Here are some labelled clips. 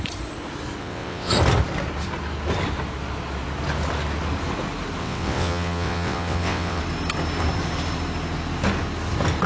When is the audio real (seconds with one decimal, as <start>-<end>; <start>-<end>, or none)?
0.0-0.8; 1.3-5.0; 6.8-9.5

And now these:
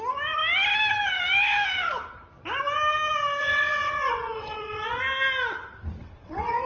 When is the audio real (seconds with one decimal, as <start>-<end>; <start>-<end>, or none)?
0.0-3.4; 5.0-6.0

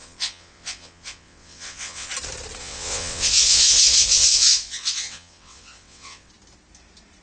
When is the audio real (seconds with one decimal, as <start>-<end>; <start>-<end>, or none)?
2.1-2.6; 6.3-7.2

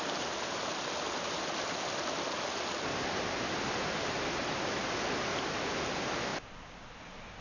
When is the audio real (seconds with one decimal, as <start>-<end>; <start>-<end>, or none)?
0.0-7.4

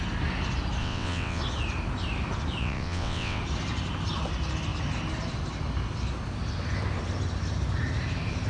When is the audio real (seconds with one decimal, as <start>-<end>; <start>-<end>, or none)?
0.0-0.8; 1.4-2.6; 3.4-8.5

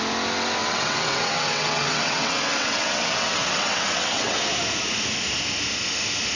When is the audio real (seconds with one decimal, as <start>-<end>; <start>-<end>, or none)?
0.0-0.6; 4.4-6.4

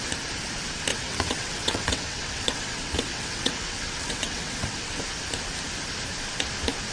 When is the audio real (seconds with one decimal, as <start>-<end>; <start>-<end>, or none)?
0.0-0.9; 5.0-6.9